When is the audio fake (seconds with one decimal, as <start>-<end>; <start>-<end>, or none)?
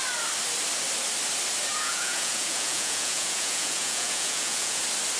1.7-4.8